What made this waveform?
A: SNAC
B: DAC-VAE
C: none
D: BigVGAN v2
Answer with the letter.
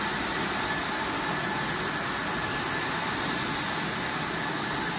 C